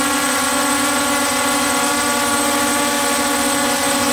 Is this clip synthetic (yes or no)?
no